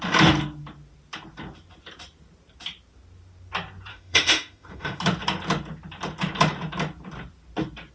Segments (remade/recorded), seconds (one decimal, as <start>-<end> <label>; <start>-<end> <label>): 0.0-3.9 recorded; 3.9-5.0 remade; 5.0-7.9 recorded